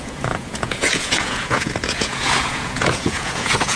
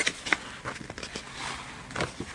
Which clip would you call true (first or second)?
second